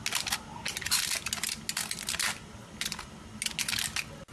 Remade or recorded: recorded